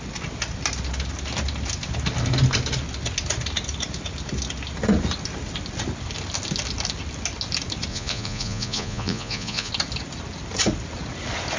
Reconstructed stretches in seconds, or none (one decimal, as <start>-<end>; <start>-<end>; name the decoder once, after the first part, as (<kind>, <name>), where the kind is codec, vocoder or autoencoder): 7.9-9.7 (vocoder, Vocos)

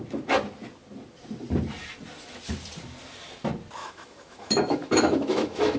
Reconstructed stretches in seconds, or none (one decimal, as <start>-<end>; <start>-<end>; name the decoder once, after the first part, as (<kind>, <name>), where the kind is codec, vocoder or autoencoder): 3.8-5.8 (autoencoder, DAC-VAE)

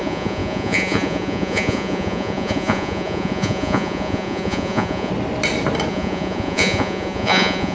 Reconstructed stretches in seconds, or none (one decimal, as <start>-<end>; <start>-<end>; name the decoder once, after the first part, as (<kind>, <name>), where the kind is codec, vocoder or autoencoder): 0.0-5.1 (vocoder, Vocos); 5.9-7.7

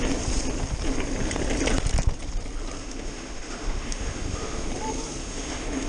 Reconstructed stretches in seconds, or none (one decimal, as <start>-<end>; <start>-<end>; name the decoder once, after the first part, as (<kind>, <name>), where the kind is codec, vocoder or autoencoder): 2.8-4.7 (autoencoder, DAC-VAE); 5.2-5.9

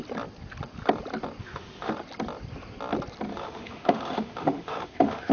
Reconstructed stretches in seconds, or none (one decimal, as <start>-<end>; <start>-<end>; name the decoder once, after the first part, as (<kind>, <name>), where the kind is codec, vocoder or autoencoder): 1.4-1.9 (autoencoder, DAC-VAE); 3.3-5.3

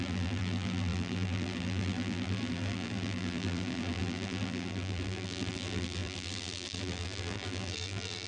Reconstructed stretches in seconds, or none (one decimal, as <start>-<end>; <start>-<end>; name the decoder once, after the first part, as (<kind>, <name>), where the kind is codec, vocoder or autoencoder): 0.0-8.3 (vocoder, BigVGAN v2)

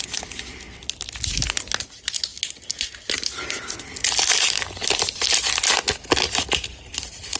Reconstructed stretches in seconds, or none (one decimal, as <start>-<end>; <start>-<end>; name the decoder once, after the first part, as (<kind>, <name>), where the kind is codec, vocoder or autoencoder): none

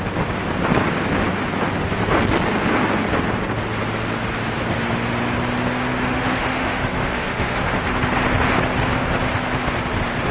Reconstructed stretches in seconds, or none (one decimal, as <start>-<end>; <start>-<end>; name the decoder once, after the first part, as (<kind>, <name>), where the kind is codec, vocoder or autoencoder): 6.0-7.9 (autoencoder, DAC-VAE)